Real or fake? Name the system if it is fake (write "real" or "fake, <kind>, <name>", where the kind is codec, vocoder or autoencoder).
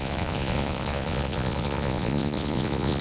fake, vocoder, Vocos